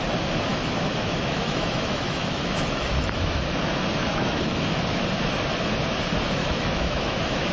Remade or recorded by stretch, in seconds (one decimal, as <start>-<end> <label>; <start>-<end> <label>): 0.0-0.5 recorded; 0.5-5.0 remade; 5.0-6.4 recorded; 6.4-7.5 remade